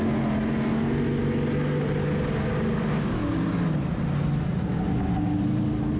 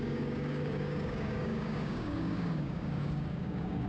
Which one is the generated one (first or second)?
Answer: second